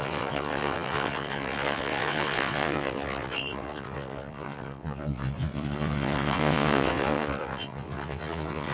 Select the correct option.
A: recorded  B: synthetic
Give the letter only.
B